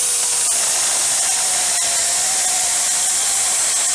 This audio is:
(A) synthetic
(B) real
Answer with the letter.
B